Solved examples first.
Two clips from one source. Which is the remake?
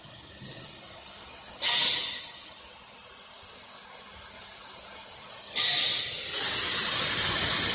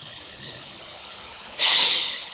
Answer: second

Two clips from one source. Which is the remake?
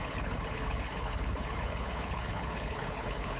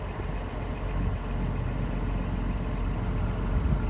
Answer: first